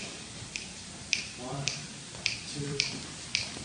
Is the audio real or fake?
fake